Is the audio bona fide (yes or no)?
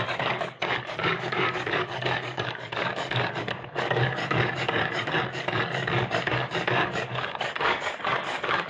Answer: no